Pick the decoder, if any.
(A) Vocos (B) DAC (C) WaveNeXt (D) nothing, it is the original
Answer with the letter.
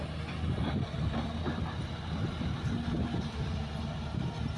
D